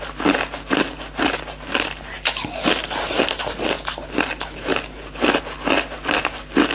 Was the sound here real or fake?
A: real